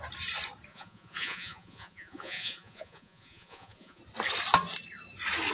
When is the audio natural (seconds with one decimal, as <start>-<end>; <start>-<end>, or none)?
0.0-0.7; 4.0-5.5